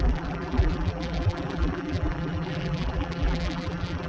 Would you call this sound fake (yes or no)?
yes